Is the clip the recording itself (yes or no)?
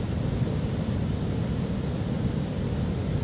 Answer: yes